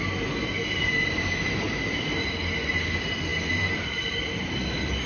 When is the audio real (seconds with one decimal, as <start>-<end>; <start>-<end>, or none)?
0.0-5.1